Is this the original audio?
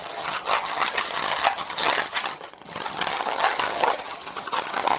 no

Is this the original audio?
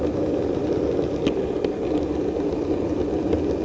yes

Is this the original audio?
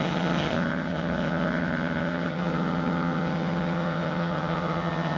no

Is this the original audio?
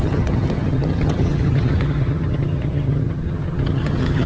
no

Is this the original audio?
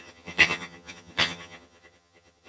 no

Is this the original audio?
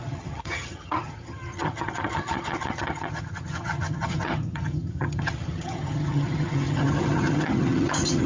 no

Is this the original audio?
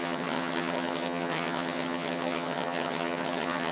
no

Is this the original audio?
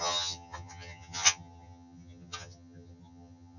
no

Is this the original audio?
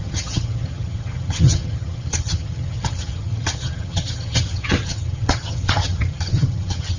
no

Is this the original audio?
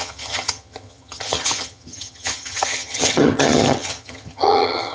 no